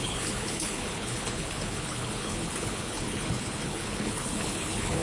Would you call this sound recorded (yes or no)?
no